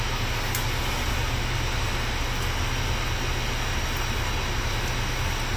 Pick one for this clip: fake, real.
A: real